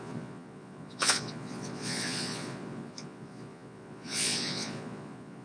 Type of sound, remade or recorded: remade